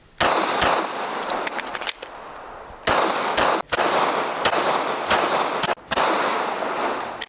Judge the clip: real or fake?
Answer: real